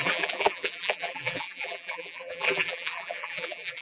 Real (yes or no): no